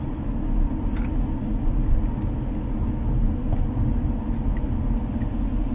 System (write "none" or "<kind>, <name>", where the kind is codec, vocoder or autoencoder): none